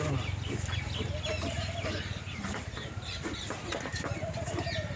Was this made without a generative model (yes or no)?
yes